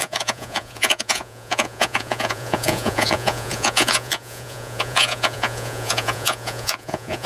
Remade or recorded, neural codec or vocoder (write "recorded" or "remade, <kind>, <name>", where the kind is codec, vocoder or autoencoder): remade, vocoder, Vocos